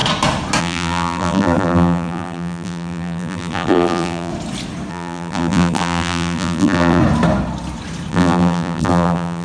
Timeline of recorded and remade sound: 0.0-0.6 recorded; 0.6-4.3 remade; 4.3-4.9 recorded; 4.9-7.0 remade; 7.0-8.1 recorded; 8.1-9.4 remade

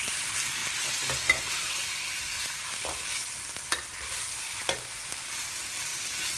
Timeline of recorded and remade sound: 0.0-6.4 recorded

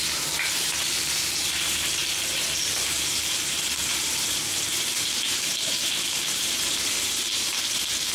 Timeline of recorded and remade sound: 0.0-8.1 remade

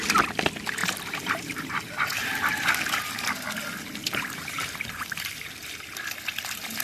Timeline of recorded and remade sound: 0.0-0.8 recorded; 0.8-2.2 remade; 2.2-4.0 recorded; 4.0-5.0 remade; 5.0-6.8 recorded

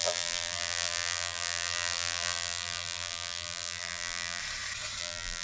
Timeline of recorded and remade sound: 0.0-4.4 remade; 4.4-5.0 recorded; 5.0-5.4 remade

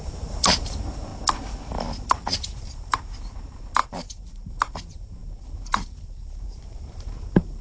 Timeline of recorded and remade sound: 0.0-1.1 remade; 1.1-2.4 recorded; 2.4-7.6 remade